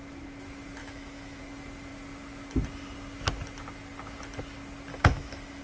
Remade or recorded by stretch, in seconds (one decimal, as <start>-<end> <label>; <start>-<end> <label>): 0.0-0.8 recorded; 0.8-1.4 remade; 1.4-4.9 recorded; 4.9-5.6 remade